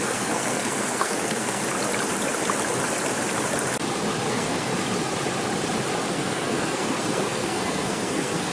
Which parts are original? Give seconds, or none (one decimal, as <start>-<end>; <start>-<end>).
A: 1.6-4.3; 4.7-6.1